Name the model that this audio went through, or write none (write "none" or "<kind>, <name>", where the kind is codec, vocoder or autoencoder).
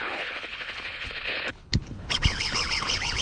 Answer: codec, HILCodec